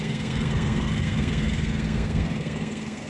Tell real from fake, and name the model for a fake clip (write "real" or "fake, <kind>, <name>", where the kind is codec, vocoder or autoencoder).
fake, codec, SNAC